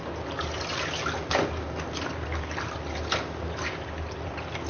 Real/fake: real